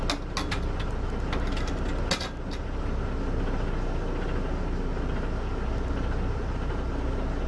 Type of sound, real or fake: real